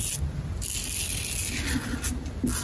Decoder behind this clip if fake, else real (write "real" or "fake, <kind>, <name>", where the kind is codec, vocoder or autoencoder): real